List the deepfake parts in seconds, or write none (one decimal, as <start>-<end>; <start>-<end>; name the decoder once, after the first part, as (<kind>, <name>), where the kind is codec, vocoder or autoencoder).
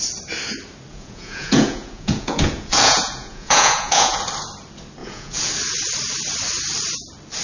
0.9-4.2 (vocoder, Vocos); 5.0-5.5